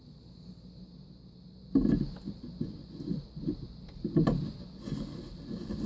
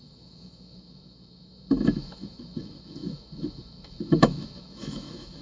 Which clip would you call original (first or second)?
first